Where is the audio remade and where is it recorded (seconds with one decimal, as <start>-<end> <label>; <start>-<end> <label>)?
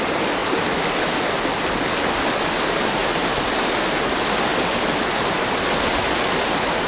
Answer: 0.0-0.4 recorded; 0.4-1.7 remade; 1.7-3.0 recorded; 3.0-3.5 remade; 3.5-4.5 recorded; 4.5-5.6 remade; 5.6-6.9 recorded